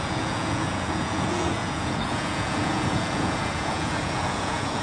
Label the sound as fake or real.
fake